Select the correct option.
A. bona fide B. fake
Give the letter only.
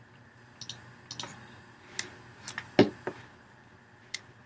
A